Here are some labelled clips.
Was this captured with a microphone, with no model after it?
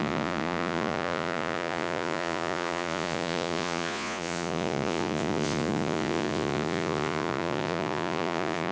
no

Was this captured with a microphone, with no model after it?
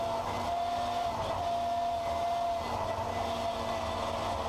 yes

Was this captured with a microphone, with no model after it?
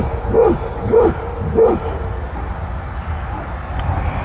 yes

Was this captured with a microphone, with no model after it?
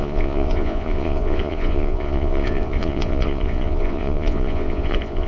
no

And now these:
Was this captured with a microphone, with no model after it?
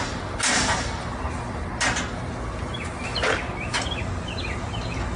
yes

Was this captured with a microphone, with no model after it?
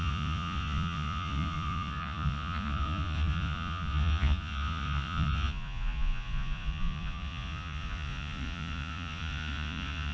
no